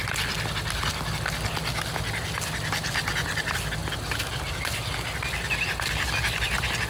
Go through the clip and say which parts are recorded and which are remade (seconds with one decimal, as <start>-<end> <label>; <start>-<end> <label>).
0.0-6.9 recorded